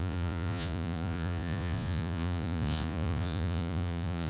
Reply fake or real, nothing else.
fake